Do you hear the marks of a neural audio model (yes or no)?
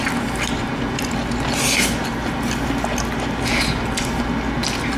no